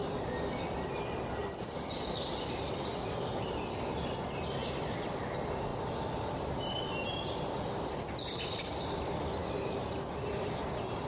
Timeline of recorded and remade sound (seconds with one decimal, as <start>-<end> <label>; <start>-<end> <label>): 0.0-5.7 remade; 5.7-6.3 recorded; 6.3-9.4 remade; 9.4-10.1 recorded; 10.1-11.1 remade